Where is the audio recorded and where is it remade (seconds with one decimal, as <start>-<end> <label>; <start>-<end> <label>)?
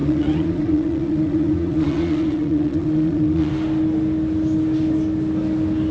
0.0-3.5 remade; 3.5-5.9 recorded